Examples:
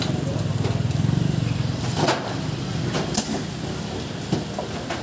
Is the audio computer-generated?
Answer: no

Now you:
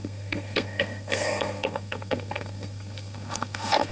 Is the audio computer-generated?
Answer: yes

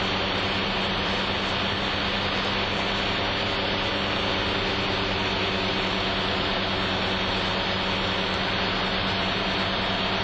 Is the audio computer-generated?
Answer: no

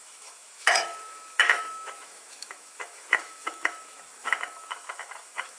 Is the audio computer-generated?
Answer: yes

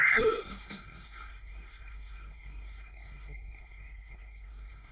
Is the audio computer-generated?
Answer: yes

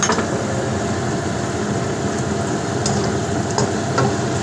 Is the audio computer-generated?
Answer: no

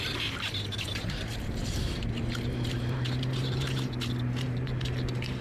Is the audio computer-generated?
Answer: yes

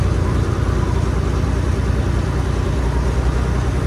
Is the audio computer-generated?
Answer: no